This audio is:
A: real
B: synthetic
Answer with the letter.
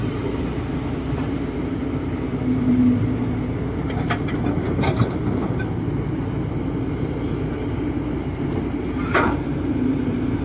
B